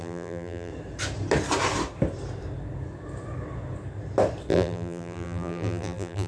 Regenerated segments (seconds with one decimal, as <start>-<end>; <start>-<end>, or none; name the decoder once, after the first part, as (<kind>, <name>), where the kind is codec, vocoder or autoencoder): 0.0-0.7 (vocoder, BigVGAN v2); 4.5-6.3